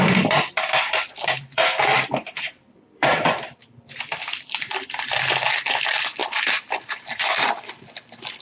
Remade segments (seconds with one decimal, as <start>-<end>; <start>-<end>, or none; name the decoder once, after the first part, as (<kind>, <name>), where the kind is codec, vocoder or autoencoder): 0.0-6.2 (vocoder, BigVGAN v2); 6.7-8.4